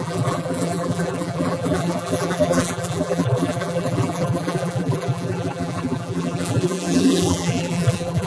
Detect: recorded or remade remade